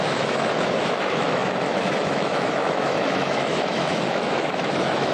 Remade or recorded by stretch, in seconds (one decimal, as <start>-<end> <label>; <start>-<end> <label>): 0.0-5.1 remade